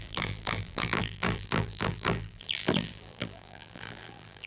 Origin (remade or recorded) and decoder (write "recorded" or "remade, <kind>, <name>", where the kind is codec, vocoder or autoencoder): remade, vocoder, BigVGAN v2